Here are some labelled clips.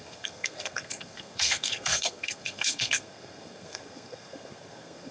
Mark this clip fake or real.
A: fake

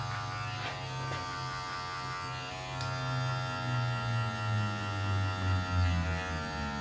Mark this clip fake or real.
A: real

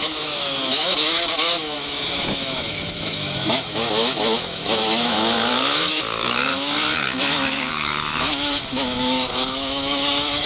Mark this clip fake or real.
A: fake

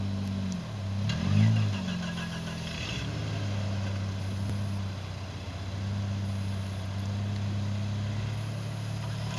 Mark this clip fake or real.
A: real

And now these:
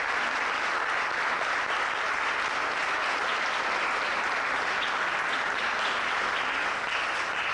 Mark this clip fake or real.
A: real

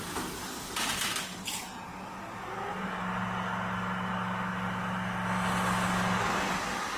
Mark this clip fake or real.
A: real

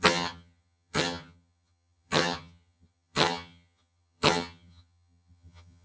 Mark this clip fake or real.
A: fake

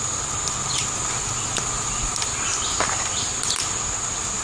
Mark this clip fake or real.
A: real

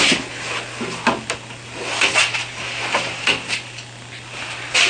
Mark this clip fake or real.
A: real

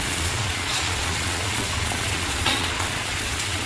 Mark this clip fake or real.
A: fake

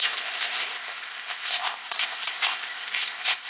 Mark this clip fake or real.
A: fake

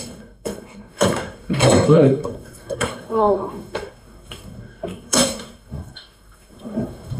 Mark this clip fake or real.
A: fake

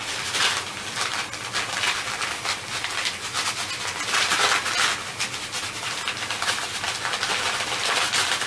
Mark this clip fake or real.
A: real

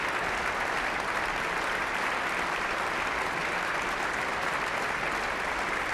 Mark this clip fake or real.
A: real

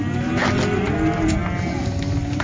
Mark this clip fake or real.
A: real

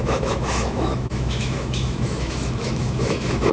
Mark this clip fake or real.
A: fake